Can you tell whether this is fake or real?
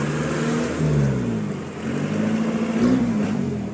real